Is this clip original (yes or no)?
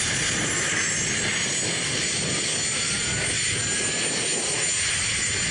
yes